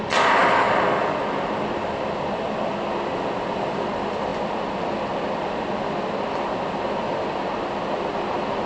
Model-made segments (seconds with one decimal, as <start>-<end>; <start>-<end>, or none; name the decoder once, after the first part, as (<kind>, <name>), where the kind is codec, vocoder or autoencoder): none